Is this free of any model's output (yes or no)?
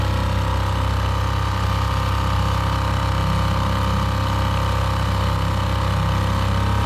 yes